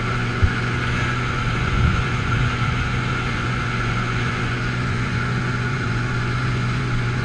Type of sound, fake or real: fake